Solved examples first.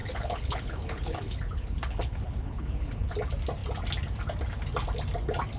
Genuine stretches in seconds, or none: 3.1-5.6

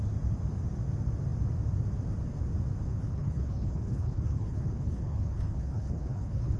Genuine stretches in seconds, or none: 0.0-2.9

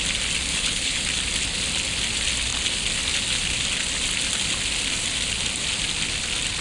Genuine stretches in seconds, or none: 0.0-0.5; 1.0-6.6